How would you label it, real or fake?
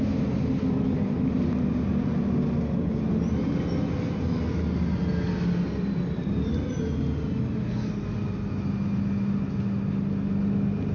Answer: real